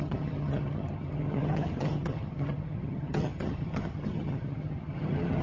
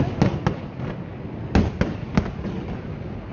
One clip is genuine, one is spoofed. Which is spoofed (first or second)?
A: first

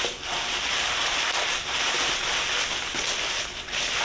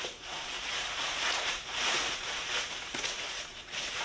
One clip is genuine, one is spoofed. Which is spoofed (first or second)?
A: second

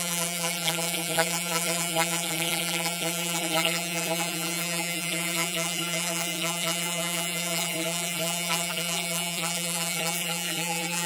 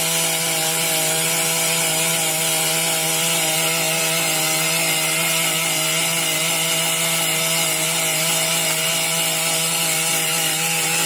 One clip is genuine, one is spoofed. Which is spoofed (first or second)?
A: first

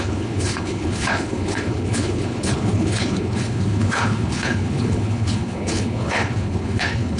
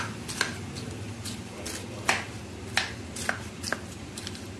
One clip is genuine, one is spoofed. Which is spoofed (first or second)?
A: first